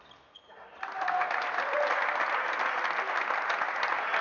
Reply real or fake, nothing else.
real